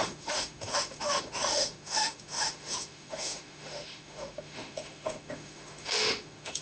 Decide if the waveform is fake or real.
fake